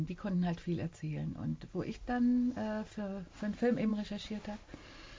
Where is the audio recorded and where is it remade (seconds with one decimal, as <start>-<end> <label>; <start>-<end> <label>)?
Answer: 0.0-5.2 recorded